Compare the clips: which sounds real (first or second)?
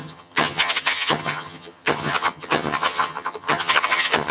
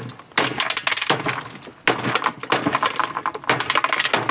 second